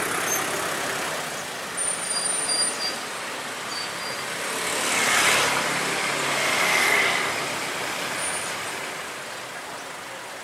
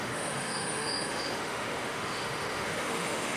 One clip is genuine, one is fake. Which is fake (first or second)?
second